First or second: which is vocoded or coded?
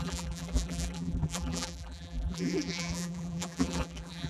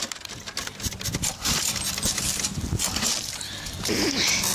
first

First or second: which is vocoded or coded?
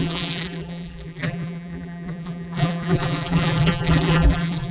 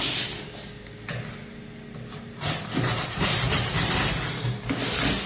first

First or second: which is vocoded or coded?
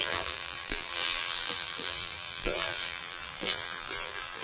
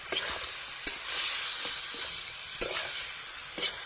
first